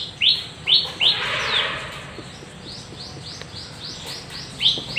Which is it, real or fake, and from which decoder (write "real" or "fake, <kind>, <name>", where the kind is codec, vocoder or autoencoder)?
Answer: real